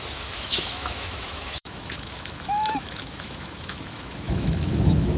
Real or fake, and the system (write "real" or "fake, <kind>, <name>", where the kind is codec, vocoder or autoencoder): fake, autoencoder, DAC-VAE